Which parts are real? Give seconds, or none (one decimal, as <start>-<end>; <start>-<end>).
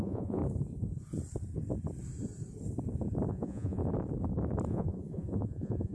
0.4-3.3; 3.8-4.7